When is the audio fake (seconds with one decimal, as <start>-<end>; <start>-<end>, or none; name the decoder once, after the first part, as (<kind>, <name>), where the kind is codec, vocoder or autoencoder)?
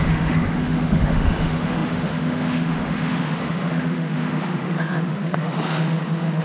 0.0-6.4 (autoencoder, DAC-VAE)